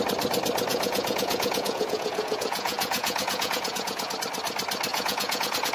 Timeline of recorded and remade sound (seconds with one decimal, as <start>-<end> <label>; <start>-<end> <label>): 0.0-0.7 recorded; 0.7-4.1 remade; 4.1-4.9 recorded; 4.9-5.7 remade